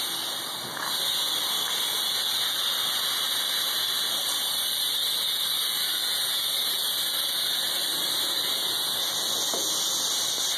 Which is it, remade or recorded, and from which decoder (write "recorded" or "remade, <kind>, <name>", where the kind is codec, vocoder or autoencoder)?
recorded